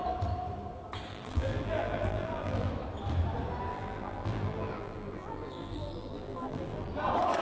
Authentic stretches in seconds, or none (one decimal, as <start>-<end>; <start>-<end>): 0.0-1.1; 2.7-3.7; 6.9-7.4